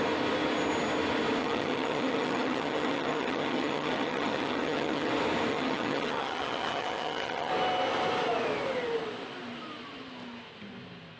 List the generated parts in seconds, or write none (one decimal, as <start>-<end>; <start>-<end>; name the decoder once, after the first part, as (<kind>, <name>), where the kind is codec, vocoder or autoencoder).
1.4-5.1 (vocoder, HiFi-GAN); 5.5-7.5